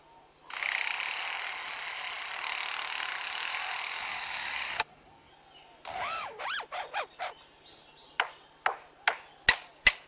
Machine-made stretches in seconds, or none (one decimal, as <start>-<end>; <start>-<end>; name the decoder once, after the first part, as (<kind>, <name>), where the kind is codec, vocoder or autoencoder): 4.0-5.3 (codec, DAC); 5.9-6.4